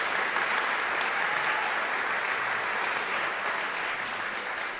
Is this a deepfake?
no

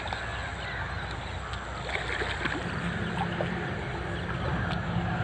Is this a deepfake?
no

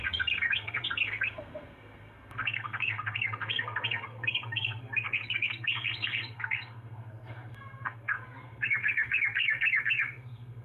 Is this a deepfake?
yes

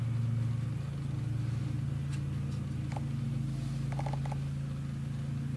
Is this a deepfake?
no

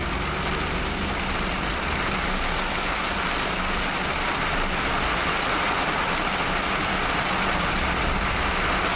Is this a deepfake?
no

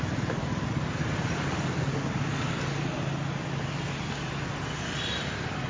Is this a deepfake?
no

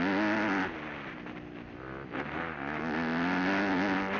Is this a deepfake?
no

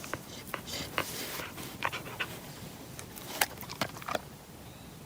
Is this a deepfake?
yes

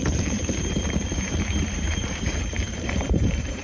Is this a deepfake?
yes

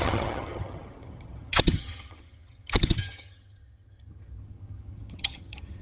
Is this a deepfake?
yes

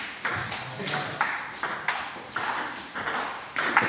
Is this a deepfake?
no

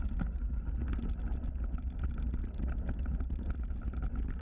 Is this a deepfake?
no